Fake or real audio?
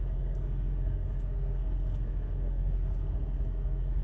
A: fake